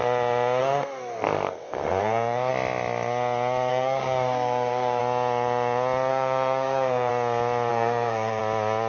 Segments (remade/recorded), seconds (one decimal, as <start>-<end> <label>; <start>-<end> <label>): 0.0-0.6 recorded; 0.6-2.5 remade; 2.5-3.7 recorded; 3.7-5.0 remade; 5.0-6.1 recorded; 6.1-7.1 remade; 7.1-7.7 recorded; 7.7-8.4 remade; 8.4-8.9 recorded